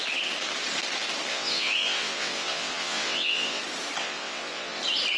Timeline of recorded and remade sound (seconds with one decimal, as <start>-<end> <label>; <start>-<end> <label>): 0.0-1.3 recorded; 1.3-3.6 remade; 3.6-4.0 recorded; 4.0-4.8 remade; 4.8-5.2 recorded